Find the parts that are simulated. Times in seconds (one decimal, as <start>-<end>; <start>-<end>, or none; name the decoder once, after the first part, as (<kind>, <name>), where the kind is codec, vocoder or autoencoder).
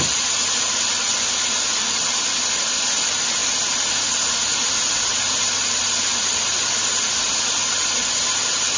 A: none